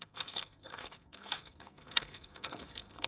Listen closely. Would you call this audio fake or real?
fake